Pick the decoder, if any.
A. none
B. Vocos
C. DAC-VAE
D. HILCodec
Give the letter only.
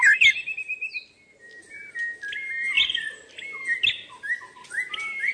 A